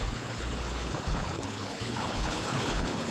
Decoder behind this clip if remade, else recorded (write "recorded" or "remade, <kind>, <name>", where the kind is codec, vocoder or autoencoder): remade, codec, HILCodec